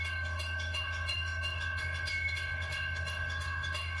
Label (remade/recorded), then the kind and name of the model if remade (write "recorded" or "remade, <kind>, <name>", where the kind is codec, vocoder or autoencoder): remade, autoencoder, DAC-VAE